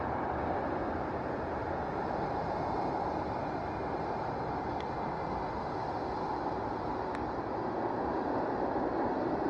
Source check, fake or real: real